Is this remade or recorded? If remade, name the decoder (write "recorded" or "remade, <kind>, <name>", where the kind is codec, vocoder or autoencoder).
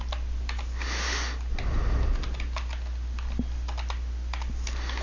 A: recorded